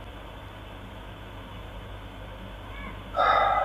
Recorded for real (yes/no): yes